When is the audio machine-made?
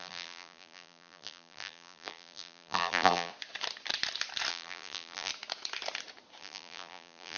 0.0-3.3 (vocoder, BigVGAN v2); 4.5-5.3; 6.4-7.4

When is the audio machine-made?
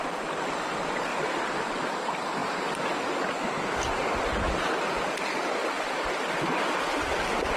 none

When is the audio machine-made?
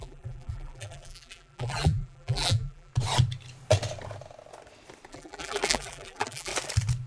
0.0-2.9 (vocoder, BigVGAN v2); 5.1-6.5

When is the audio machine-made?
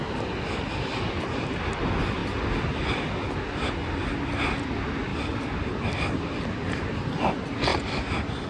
5.1-5.7 (vocoder, BigVGAN v2)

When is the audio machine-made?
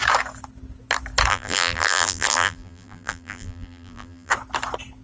1.3-4.3 (vocoder, BigVGAN v2)